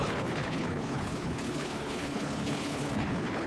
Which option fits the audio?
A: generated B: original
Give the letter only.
A